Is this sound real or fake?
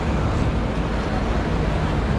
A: real